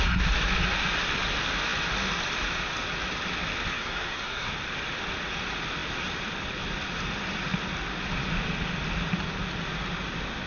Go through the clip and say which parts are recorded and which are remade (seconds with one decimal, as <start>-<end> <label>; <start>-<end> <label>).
0.0-3.7 recorded; 3.7-4.5 remade; 4.5-10.5 recorded